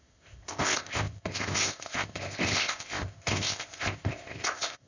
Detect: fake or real fake